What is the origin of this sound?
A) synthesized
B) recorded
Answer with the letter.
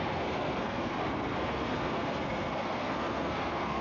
A